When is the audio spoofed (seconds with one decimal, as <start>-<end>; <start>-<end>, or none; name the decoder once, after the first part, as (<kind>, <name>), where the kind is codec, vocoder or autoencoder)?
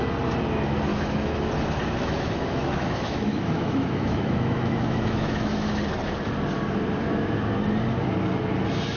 0.9-1.5 (autoencoder, DAC-VAE); 2.0-5.7